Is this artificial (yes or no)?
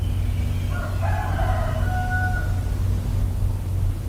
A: no